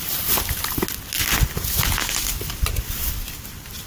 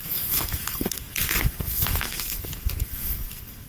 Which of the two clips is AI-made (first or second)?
second